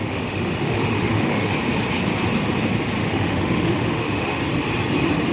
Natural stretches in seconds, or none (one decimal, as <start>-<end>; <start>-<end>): 1.5-3.0; 4.4-5.3